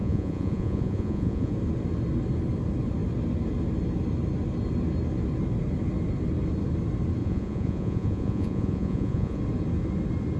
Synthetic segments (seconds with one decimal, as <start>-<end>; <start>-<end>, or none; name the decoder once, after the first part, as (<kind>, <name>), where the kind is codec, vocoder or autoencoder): 0.0-1.5 (vocoder, Vocos); 7.2-9.4